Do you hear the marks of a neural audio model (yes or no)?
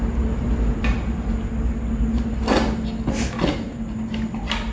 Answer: no